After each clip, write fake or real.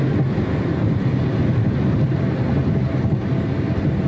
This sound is real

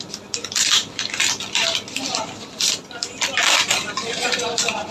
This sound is fake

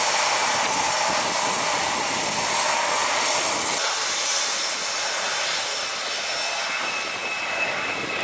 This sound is real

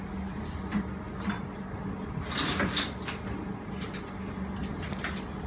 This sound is real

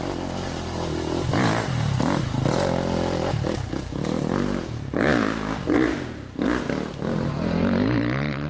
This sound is real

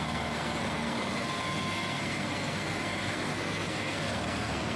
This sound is fake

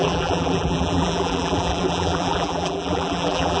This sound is fake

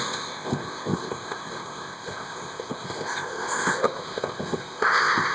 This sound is fake